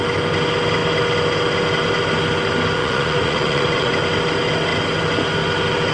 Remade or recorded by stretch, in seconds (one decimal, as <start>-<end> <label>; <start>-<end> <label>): 0.0-2.8 recorded; 2.8-3.9 remade; 3.9-5.9 recorded

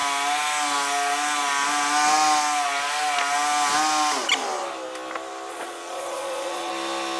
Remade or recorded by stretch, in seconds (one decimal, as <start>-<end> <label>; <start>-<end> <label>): 0.0-5.5 recorded; 5.5-6.7 remade; 6.7-7.2 recorded